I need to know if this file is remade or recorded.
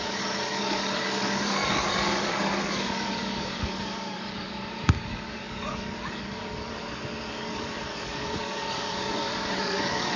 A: remade